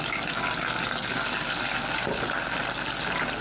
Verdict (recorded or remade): recorded